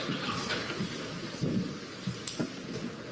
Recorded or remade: recorded